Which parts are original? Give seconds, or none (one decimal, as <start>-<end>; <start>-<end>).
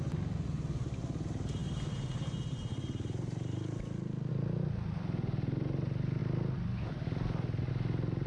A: 0.0-8.3